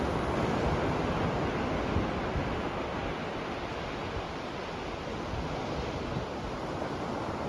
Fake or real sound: real